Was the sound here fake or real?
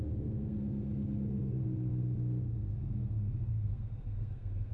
fake